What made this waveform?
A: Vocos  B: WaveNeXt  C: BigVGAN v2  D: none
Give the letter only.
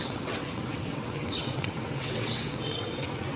B